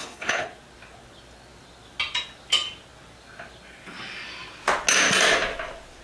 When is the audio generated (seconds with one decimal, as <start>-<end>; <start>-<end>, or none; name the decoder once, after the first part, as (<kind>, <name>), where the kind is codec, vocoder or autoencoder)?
0.0-0.5 (codec, HILCodec)